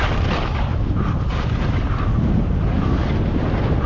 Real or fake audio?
real